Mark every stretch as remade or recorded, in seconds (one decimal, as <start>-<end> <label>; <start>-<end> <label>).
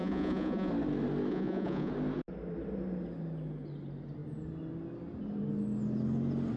0.0-0.7 remade; 0.7-1.3 recorded; 1.3-1.9 remade; 1.9-6.6 recorded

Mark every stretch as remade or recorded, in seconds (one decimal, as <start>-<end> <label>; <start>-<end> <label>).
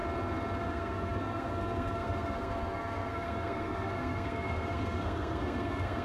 0.0-0.6 recorded; 0.6-6.0 remade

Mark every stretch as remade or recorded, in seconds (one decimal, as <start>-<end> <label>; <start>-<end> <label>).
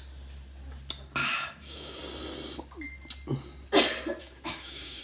0.0-1.2 recorded; 1.2-2.0 remade; 2.0-4.2 recorded; 4.2-5.0 remade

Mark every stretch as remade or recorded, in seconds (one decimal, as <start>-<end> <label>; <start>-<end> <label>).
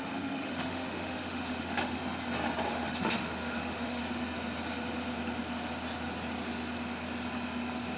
0.0-2.0 remade; 2.0-2.7 recorded; 2.7-4.0 remade; 4.0-8.0 recorded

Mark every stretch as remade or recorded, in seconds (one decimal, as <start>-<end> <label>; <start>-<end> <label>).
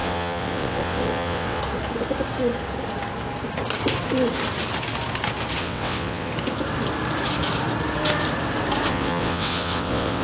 0.0-1.6 remade; 1.6-5.6 recorded; 5.6-6.3 remade; 6.3-8.9 recorded; 8.9-10.2 remade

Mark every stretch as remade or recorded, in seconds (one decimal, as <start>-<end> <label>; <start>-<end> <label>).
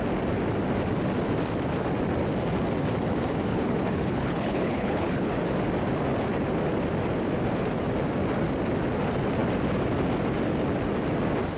0.0-3.5 recorded; 3.5-5.3 remade; 5.3-11.6 recorded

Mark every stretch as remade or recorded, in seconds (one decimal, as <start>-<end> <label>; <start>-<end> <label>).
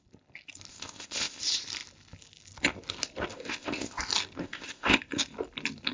0.0-0.7 recorded; 0.7-1.4 remade; 1.4-3.3 recorded; 3.3-4.0 remade; 4.0-4.4 recorded; 4.4-5.0 remade; 5.0-5.9 recorded